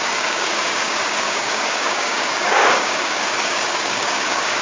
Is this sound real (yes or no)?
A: no